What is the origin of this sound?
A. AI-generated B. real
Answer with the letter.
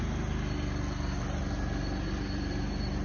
B